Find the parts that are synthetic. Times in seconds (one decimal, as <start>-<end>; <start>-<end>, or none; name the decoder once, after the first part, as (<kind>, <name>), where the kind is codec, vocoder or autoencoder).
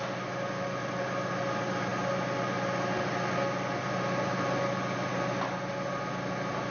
none